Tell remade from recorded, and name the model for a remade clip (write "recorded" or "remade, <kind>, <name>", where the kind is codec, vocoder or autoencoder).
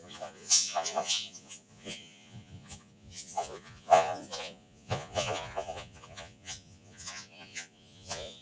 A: remade, vocoder, Vocos